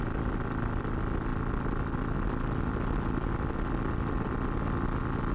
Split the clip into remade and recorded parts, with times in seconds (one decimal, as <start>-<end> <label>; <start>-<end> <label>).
0.0-5.3 recorded